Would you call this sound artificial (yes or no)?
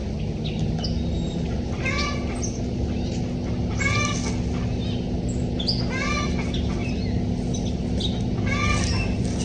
no